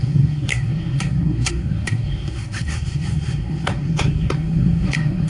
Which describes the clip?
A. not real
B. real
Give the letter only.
A